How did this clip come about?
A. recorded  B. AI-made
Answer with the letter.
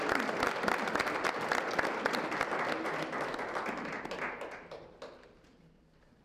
A